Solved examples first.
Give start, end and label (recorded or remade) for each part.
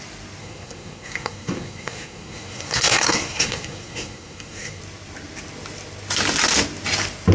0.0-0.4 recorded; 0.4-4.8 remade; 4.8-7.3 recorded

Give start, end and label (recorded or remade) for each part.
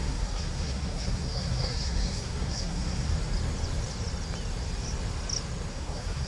0.0-3.1 remade; 3.1-5.7 recorded; 5.7-6.3 remade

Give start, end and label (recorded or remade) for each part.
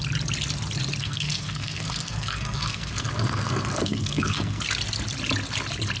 0.0-1.0 recorded; 1.0-4.6 remade; 4.6-6.0 recorded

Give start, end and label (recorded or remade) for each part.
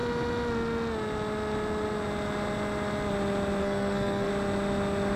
0.0-3.6 recorded; 3.6-4.3 remade; 4.3-5.2 recorded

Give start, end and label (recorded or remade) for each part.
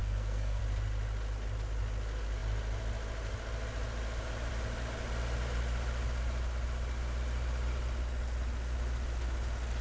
0.0-0.6 remade; 0.6-9.8 recorded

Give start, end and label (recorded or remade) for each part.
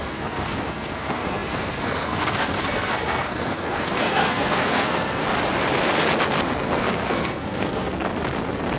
0.0-5.2 remade; 5.2-6.6 recorded; 6.6-8.1 remade; 8.1-8.8 recorded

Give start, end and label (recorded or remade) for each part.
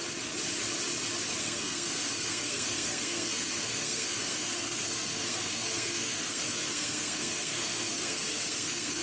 0.0-1.4 recorded; 1.4-9.0 remade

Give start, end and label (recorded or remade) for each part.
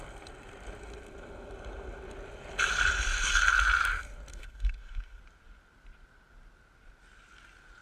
0.0-4.3 recorded; 4.3-5.2 remade; 5.2-7.8 recorded